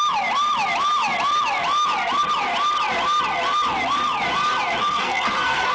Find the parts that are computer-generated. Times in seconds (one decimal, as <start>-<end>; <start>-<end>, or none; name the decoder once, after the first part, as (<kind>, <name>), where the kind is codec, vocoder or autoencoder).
4.8-5.7 (codec, SNAC)